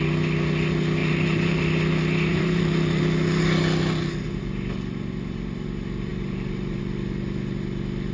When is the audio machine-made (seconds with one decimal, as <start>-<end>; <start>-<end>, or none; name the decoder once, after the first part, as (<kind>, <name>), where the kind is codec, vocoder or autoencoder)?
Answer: 1.0-1.6 (vocoder, BigVGAN v2); 2.3-3.0; 6.1-6.8

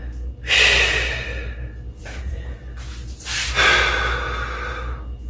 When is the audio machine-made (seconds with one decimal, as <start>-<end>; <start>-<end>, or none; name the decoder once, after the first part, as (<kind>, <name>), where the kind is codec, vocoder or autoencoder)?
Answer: 2.0-2.6 (vocoder, Vocos)

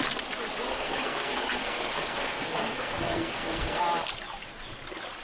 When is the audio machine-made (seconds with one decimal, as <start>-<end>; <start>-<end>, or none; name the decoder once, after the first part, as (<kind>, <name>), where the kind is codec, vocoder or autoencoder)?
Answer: 0.7-3.8 (codec, SNAC)

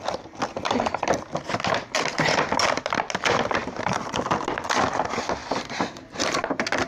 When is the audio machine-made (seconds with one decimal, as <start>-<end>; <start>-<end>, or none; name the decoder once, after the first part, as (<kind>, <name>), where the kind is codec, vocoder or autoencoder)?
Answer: 3.6-4.3 (vocoder, BigVGAN v2)

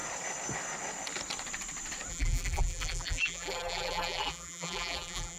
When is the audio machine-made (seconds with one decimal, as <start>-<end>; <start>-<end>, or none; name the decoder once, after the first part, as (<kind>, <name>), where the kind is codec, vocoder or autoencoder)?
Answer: 2.1-5.4 (vocoder, BigVGAN v2)

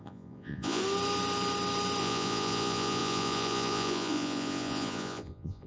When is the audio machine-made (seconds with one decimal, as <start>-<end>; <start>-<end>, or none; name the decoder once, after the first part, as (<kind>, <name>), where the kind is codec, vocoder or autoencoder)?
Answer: 0.0-0.8 (vocoder, Vocos); 2.0-5.7

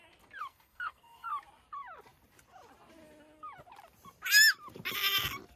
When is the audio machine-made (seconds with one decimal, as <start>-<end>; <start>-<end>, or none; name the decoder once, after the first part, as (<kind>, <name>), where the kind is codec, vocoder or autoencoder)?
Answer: 0.5-1.3 (codec, SNAC)

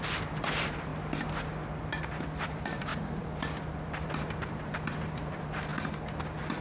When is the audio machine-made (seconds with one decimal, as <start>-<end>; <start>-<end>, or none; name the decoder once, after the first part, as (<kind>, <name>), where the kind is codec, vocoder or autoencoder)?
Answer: 0.0-0.9 (vocoder, BigVGAN v2); 2.0-5.7